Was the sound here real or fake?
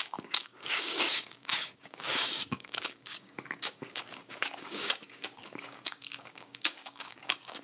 fake